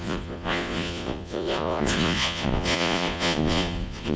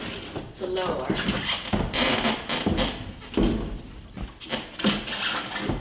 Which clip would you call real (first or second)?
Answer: second